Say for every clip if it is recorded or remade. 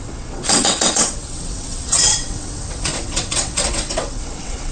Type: remade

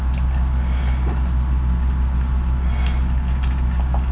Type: recorded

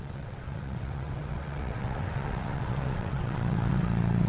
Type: remade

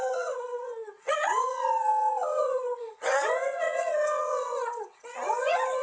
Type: remade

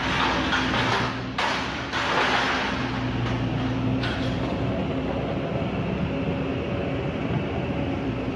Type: recorded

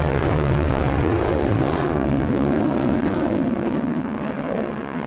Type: remade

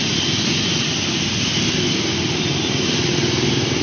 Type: recorded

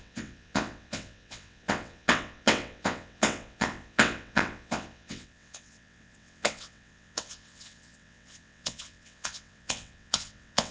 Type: remade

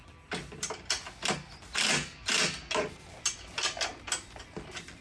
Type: recorded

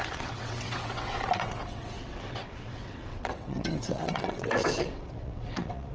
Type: remade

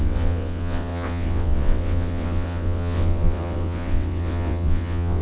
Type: remade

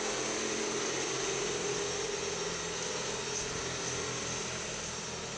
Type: recorded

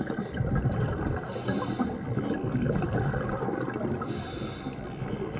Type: recorded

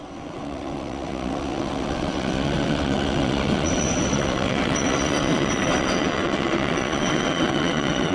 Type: remade